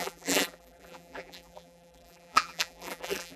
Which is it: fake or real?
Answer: fake